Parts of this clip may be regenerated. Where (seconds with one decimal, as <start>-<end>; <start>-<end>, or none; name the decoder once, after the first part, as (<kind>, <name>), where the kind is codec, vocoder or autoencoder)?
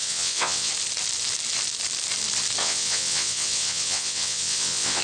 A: 0.0-0.7 (vocoder, WaveNeXt); 2.6-5.0